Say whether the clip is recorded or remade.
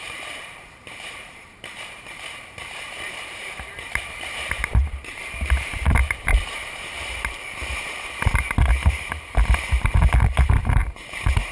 remade